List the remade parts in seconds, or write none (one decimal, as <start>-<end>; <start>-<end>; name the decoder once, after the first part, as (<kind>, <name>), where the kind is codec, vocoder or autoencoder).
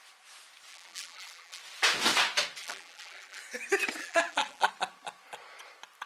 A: 0.7-1.6 (vocoder, BigVGAN v2); 2.6-3.4; 4.0-4.7